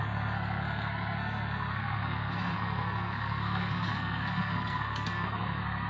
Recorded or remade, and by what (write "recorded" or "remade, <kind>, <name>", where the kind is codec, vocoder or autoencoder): remade, codec, SNAC